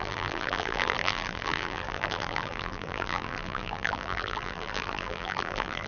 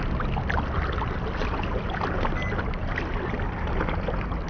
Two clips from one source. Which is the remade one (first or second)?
first